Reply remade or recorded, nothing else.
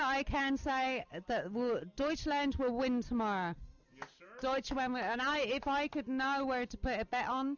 recorded